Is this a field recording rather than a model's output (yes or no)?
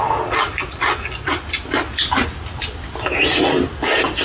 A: yes